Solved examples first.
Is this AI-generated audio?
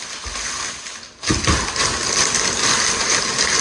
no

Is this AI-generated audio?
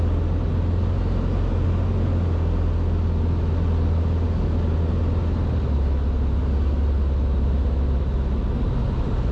no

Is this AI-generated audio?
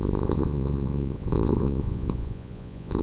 yes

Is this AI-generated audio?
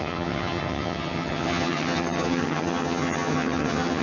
yes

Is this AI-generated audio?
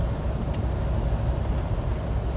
no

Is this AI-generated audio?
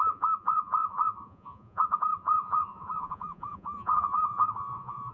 yes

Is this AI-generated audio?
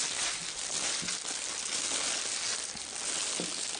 no